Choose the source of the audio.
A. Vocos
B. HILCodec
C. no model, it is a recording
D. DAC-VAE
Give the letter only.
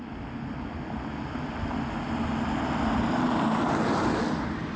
C